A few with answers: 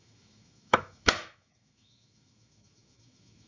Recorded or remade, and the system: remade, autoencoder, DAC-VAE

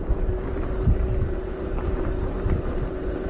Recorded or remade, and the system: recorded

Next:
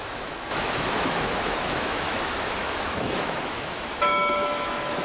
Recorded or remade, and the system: remade, autoencoder, DAC-VAE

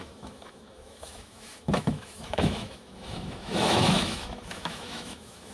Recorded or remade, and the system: remade, autoencoder, DAC-VAE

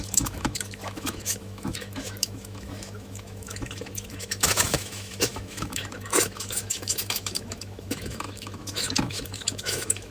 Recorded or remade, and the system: remade, autoencoder, DAC-VAE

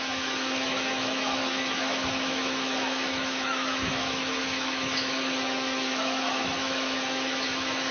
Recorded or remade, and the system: remade, autoencoder, DAC-VAE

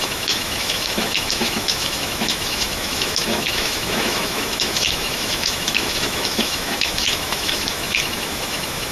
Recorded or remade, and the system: remade, autoencoder, DAC-VAE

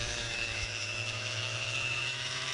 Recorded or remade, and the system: remade, autoencoder, DAC-VAE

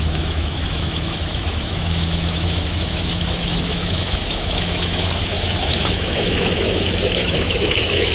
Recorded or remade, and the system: remade, autoencoder, DAC-VAE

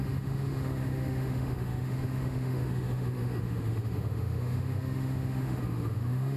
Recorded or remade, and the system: remade, autoencoder, DAC-VAE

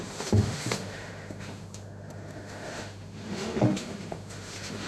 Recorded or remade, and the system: remade, autoencoder, DAC-VAE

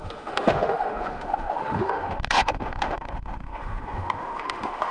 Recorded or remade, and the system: remade, autoencoder, DAC-VAE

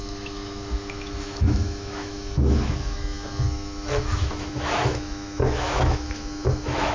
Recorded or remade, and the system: remade, autoencoder, DAC-VAE